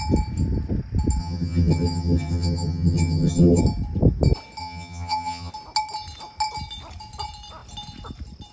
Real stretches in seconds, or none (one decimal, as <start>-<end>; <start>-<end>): 0.0-1.2; 3.6-4.6; 5.5-8.5